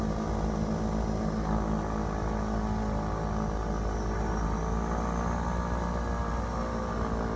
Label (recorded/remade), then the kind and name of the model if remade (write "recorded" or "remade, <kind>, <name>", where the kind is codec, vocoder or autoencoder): recorded